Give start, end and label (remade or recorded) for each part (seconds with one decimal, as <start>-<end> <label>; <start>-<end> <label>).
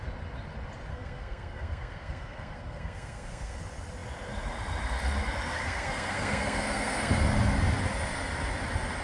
0.0-0.9 recorded; 0.9-3.6 remade; 3.6-5.5 recorded; 5.5-7.1 remade; 7.1-9.0 recorded